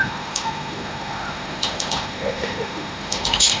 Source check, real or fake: fake